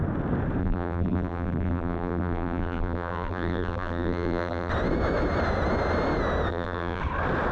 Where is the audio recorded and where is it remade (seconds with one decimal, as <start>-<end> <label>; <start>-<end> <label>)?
0.0-0.6 recorded; 0.6-4.7 remade; 4.7-6.5 recorded; 6.5-7.0 remade; 7.0-7.5 recorded